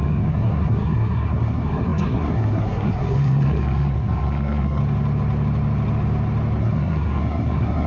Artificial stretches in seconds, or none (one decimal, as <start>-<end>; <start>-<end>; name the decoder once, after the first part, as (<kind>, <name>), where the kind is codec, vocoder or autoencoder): 0.0-4.8 (codec, SNAC); 6.6-7.9